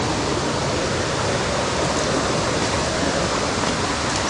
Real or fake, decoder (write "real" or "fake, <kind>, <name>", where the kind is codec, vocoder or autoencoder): real